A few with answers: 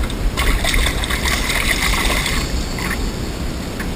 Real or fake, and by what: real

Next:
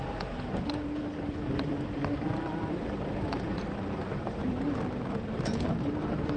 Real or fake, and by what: fake, vocoder, BigVGAN v2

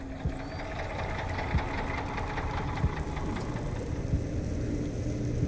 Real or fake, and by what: real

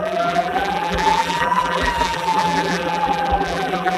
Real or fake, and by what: fake, vocoder, BigVGAN v2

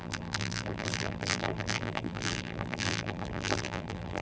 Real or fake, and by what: fake, vocoder, BigVGAN v2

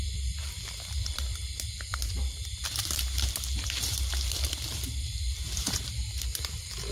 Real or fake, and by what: fake, vocoder, BigVGAN v2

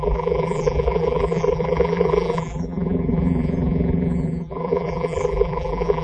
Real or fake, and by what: fake, vocoder, BigVGAN v2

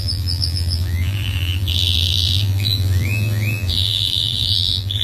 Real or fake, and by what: fake, vocoder, BigVGAN v2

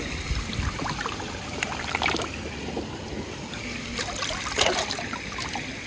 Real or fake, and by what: fake, vocoder, BigVGAN v2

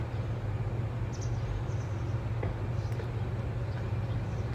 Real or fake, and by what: real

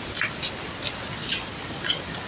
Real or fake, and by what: real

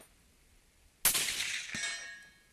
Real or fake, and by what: real